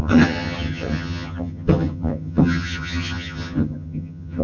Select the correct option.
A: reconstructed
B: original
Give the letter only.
A